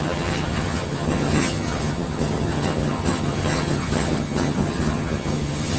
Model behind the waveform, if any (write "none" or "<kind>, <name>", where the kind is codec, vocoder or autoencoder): vocoder, HiFi-GAN